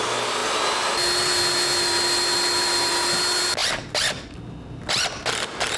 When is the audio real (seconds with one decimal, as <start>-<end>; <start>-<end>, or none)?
0.0-5.8